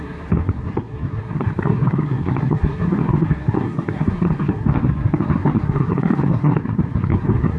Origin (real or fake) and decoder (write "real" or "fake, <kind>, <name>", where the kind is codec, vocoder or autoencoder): fake, codec, SNAC